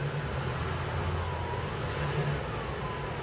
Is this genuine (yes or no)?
yes